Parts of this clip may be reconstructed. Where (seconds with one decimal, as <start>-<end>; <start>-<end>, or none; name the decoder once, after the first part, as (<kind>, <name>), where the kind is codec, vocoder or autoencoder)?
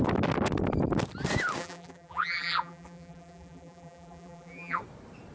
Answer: 1.6-4.8 (vocoder, BigVGAN v2)